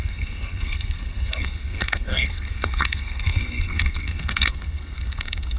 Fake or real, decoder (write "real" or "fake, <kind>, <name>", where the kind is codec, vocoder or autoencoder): fake, codec, SNAC